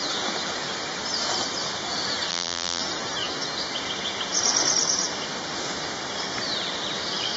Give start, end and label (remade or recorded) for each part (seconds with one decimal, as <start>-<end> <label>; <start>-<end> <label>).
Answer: 0.0-2.3 recorded; 2.3-2.8 remade; 2.8-7.4 recorded